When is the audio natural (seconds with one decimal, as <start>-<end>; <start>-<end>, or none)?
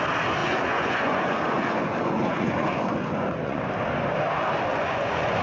0.0-0.4; 3.6-4.7